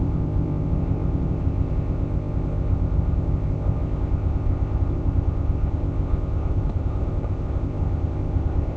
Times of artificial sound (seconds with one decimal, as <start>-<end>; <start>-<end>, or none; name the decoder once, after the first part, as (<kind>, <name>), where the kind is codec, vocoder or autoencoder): 0.0-8.8 (codec, ZipCodec)